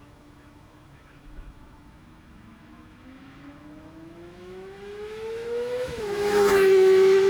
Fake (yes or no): yes